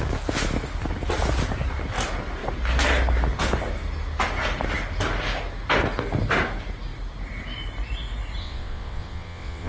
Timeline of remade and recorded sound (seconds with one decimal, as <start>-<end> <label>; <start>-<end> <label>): 0.0-8.4 recorded; 8.4-9.7 remade

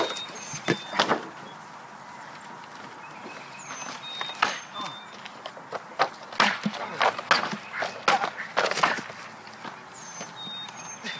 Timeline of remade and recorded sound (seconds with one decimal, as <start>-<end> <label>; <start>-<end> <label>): 0.0-11.2 recorded

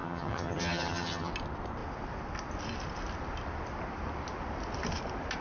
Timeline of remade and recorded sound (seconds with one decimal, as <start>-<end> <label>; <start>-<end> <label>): 0.0-1.3 remade; 1.3-5.4 recorded

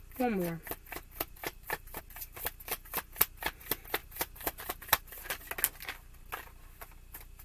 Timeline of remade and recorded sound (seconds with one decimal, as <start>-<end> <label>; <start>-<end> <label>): 0.0-1.4 recorded; 1.4-2.0 remade; 2.0-4.0 recorded; 4.0-4.7 remade; 4.7-7.4 recorded

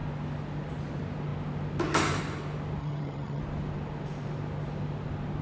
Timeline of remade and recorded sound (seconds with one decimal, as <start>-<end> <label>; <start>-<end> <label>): 0.0-2.8 recorded; 2.8-3.4 remade; 3.4-5.4 recorded